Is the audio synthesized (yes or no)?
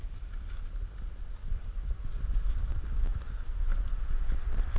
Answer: no